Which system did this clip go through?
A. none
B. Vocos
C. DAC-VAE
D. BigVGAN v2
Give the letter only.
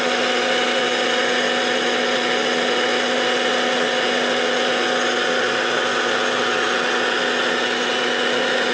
A